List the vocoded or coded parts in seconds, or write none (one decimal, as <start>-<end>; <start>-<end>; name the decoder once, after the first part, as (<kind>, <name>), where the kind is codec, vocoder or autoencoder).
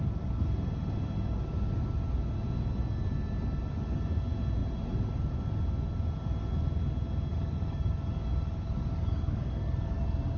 7.3-10.0 (codec, DAC)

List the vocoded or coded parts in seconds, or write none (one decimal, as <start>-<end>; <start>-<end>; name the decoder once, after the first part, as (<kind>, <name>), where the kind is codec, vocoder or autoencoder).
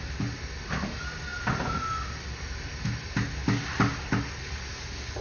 none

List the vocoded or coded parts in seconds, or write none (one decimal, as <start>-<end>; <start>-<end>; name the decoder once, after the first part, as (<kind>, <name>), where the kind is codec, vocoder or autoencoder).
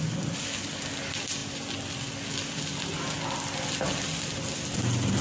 none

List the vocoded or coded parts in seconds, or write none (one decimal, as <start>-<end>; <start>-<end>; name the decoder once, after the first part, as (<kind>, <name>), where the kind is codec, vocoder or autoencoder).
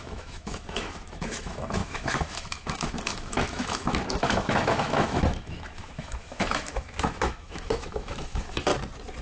0.0-8.7 (autoencoder, DAC-VAE)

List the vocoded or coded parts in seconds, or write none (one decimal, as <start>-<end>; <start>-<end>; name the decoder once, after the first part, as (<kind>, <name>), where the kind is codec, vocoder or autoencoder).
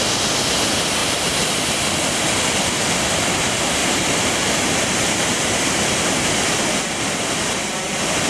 1.0-1.8 (vocoder, BigVGAN v2); 3.8-5.4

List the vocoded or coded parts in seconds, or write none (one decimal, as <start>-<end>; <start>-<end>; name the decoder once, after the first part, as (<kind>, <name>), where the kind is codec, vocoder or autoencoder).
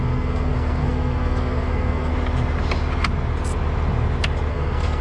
0.0-2.1 (codec, SNAC); 4.5-5.0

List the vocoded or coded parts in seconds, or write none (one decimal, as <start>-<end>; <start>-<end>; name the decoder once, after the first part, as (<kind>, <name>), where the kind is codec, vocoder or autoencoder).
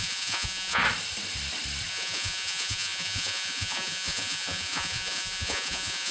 0.0-0.8 (vocoder, Vocos); 1.9-6.1